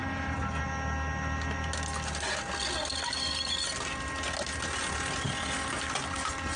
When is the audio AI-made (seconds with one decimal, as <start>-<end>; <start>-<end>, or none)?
none